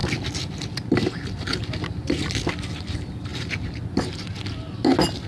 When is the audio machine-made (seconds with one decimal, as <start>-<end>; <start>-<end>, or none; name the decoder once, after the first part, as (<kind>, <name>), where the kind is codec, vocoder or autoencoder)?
none